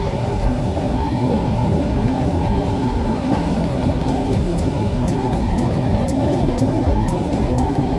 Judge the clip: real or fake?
fake